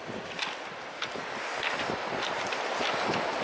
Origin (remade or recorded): recorded